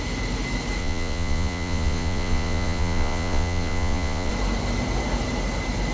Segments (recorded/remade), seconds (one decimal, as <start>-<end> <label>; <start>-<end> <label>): 0.0-0.8 recorded; 0.8-4.3 remade; 4.3-5.9 recorded